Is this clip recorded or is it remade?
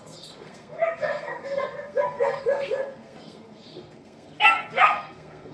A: remade